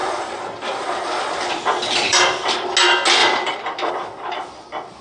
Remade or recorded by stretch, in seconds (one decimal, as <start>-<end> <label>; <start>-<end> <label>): 0.0-1.3 remade; 1.3-2.0 recorded; 2.0-2.6 remade; 2.6-3.2 recorded; 3.2-3.9 remade; 3.9-5.0 recorded